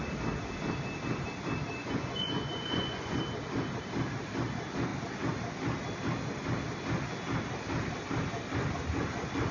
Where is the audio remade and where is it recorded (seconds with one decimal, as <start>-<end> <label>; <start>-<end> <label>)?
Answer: 0.0-1.8 recorded; 1.8-3.2 remade; 3.2-9.5 recorded